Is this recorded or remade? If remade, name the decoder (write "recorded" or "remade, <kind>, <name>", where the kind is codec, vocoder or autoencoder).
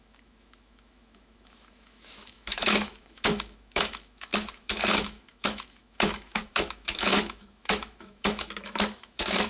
remade, autoencoder, DAC-VAE